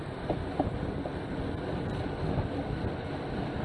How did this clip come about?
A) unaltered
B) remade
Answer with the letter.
A